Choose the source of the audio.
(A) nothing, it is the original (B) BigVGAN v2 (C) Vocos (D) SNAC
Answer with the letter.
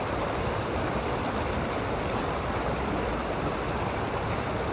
A